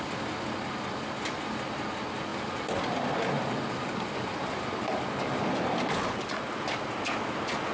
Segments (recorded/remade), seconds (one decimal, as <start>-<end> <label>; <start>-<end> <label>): 0.0-7.7 recorded